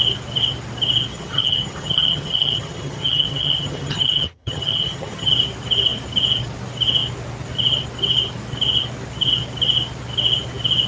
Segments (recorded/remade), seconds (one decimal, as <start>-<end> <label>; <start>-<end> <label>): 0.0-1.1 recorded; 1.1-5.3 remade; 5.3-10.9 recorded